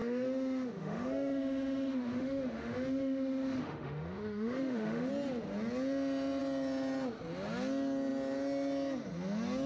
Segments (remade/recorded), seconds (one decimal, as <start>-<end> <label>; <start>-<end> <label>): 0.0-5.1 remade; 5.1-9.7 recorded

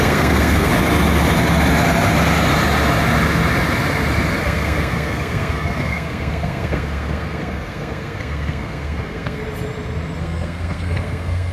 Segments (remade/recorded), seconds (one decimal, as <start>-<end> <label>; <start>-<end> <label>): 0.0-0.7 remade; 0.7-4.4 recorded; 4.4-9.4 remade; 9.4-10.2 recorded; 10.2-11.5 remade